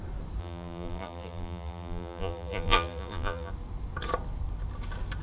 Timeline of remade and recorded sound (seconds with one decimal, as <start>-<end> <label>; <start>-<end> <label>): 0.0-0.4 recorded; 0.4-3.5 remade; 3.5-5.2 recorded